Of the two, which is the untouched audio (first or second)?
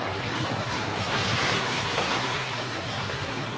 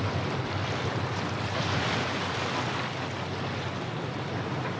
second